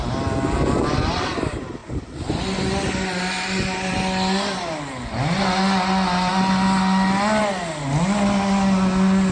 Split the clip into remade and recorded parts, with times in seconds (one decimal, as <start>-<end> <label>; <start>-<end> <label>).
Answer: 0.0-9.3 recorded